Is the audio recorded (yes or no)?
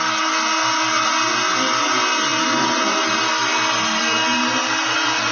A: yes